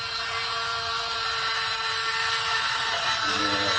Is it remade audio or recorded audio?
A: remade